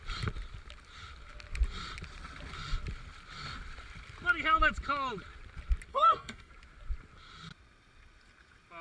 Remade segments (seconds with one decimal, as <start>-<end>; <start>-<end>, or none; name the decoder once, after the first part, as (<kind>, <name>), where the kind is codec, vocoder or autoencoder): 5.9-6.5 (codec, SNAC)